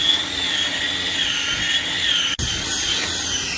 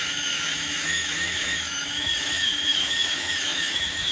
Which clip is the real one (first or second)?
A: first